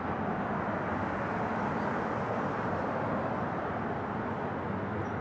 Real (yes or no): yes